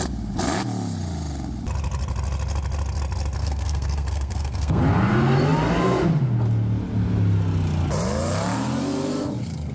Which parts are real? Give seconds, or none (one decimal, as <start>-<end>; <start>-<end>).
0.0-3.4; 4.8-9.7